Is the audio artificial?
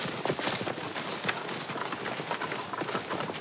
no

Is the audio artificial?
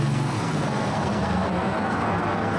yes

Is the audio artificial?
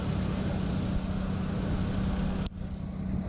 no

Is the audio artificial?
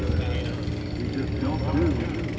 no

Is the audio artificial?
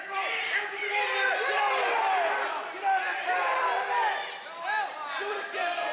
no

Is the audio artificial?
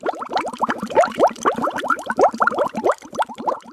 yes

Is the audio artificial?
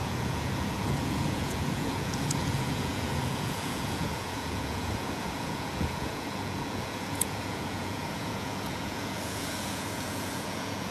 yes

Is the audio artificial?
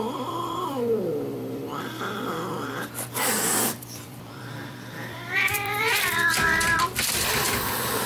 yes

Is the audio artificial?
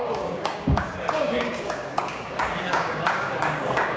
yes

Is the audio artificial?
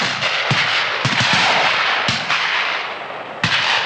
no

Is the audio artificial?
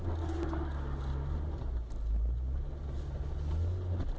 no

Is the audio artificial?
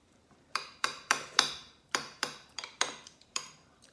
yes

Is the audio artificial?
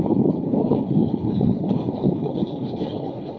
yes